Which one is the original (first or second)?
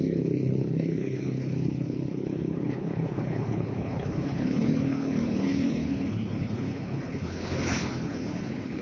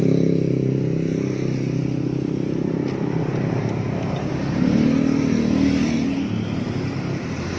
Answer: second